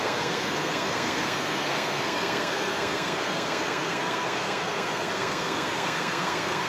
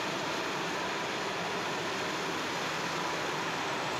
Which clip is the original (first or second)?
second